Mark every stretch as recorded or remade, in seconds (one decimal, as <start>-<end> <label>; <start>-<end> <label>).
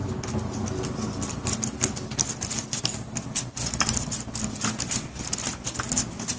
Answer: 0.0-6.4 recorded